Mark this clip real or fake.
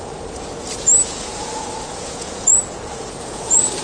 fake